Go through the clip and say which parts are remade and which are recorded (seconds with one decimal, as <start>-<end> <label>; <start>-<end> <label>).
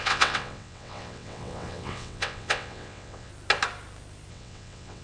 0.0-3.3 remade; 3.3-4.3 recorded; 4.3-5.0 remade